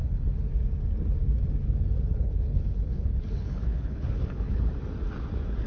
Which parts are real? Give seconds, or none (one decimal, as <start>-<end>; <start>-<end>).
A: 0.5-2.1; 4.7-5.7